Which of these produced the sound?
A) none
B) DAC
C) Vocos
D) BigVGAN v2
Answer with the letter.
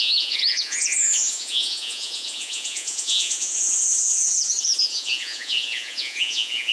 C